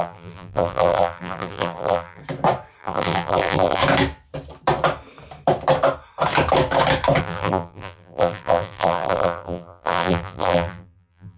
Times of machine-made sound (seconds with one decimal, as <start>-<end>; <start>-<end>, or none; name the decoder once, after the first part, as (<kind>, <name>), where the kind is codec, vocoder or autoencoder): 0.0-2.2 (vocoder, BigVGAN v2); 2.8-3.8; 7.2-11.4